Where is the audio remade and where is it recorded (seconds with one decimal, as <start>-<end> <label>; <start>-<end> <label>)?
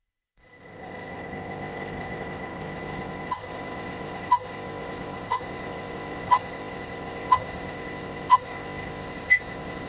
0.0-9.9 remade